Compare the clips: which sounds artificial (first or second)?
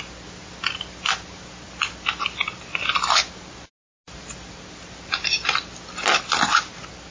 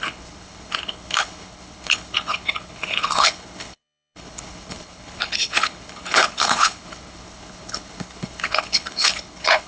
second